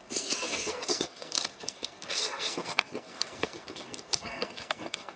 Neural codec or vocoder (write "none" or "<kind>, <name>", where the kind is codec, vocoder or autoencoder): codec, SNAC